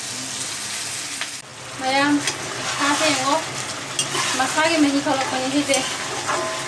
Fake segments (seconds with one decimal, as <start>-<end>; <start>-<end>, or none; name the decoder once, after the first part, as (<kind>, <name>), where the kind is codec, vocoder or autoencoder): none

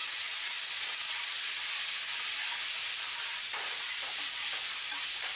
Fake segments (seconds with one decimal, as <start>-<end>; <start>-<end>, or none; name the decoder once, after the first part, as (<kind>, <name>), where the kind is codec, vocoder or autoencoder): 0.0-1.6 (vocoder, WaveNeXt)

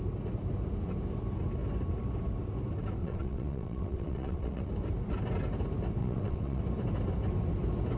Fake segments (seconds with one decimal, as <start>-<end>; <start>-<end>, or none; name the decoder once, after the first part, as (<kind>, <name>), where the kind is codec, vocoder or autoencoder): 3.0-4.7 (vocoder, WaveNeXt); 6.0-6.6

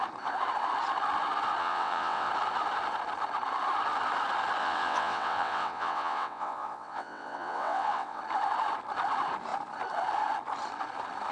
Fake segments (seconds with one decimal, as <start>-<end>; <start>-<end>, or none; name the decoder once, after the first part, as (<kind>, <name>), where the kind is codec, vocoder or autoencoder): 1.6-2.3 (vocoder, WaveNeXt); 4.6-8.2

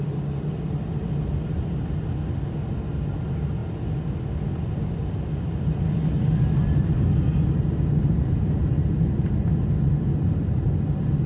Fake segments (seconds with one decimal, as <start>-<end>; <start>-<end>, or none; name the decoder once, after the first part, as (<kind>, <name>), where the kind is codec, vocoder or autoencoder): none